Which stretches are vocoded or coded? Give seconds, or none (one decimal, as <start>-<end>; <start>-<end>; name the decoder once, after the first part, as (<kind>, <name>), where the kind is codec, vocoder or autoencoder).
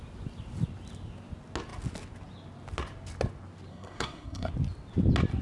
3.7-4.5 (codec, SNAC)